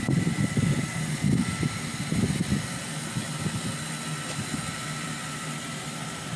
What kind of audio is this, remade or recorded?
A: recorded